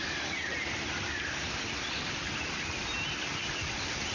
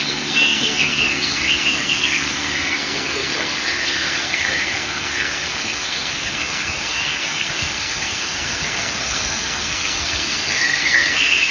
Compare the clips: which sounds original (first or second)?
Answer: first